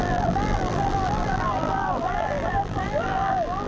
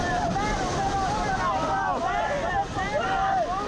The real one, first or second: second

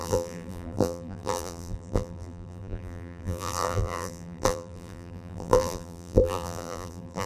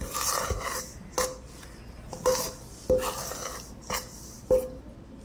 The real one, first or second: second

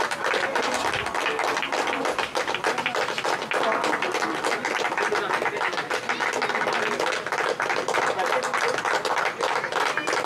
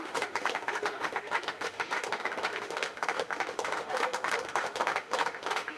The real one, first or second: first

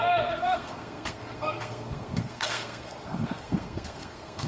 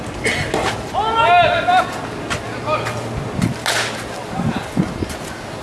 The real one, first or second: second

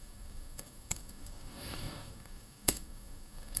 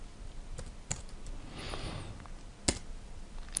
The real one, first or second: second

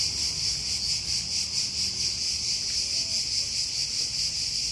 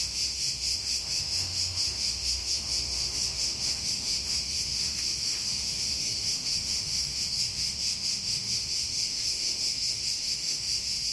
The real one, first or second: first